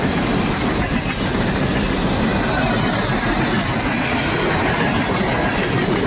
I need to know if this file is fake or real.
real